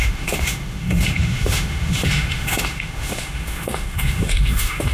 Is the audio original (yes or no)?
no